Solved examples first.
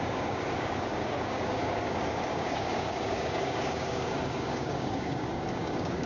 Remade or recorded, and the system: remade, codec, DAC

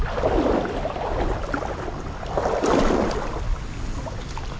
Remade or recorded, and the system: recorded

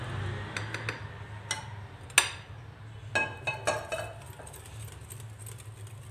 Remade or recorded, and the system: recorded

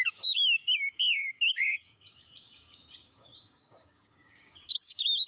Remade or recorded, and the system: remade, codec, DAC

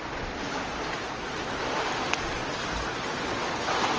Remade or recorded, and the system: recorded